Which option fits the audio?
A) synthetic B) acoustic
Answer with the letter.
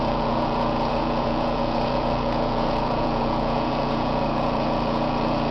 A